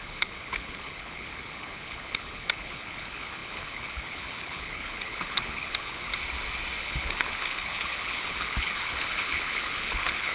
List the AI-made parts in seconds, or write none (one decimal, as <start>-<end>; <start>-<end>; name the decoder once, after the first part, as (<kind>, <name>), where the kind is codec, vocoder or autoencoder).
0.0-6.1 (codec, HILCodec); 6.8-10.3